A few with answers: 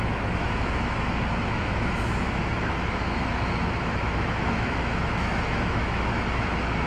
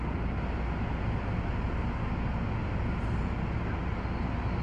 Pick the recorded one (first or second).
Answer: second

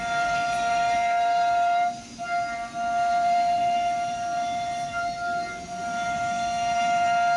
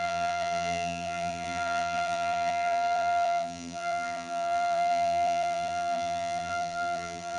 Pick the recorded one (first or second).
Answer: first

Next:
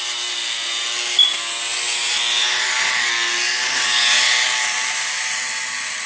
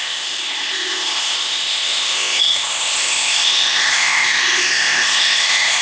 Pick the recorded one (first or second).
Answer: first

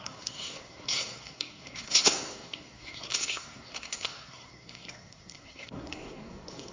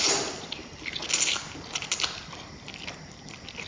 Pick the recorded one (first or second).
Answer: second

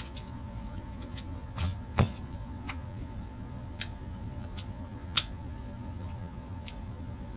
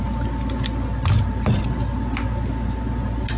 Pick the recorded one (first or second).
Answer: second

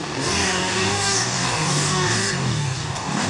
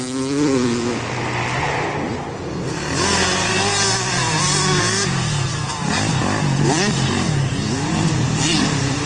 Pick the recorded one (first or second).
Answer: second